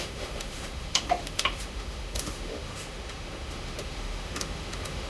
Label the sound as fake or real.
fake